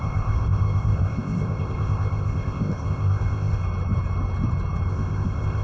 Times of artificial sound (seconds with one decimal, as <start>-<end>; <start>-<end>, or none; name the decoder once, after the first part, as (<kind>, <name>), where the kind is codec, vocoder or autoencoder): 0.0-3.6 (codec, ZipCodec); 4.9-5.6